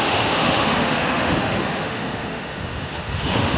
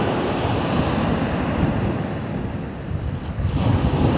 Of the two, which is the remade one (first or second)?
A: first